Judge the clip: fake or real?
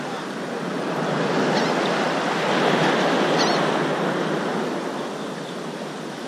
real